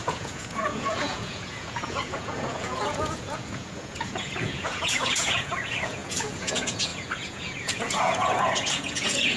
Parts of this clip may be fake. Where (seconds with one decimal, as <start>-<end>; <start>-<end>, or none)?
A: 0.0-9.4